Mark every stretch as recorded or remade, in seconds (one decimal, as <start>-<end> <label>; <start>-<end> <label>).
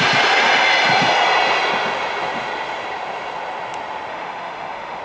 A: 0.0-4.1 recorded; 4.1-5.0 remade